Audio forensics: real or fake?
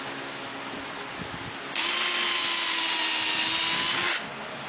real